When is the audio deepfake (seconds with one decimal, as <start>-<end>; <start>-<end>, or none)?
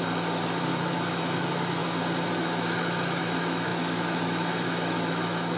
0.0-1.8; 2.3-5.6